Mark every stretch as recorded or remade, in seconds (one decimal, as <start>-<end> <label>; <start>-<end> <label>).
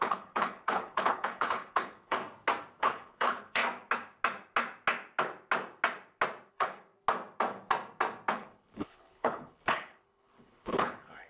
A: 0.0-2.2 remade; 2.2-2.8 recorded; 2.8-3.6 remade; 3.6-6.5 recorded; 6.5-6.9 remade; 6.9-8.3 recorded; 8.3-11.3 remade